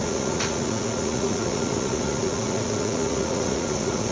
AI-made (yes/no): yes